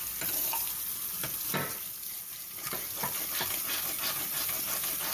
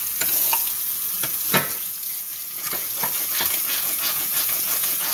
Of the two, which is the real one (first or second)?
first